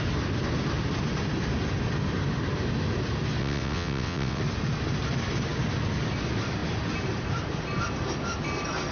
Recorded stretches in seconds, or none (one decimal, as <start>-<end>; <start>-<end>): 0.0-3.4; 4.4-8.9